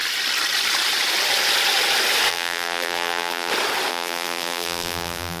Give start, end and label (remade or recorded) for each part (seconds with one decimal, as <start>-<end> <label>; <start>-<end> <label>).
0.0-2.3 recorded; 2.3-3.5 remade; 3.5-3.9 recorded; 3.9-5.4 remade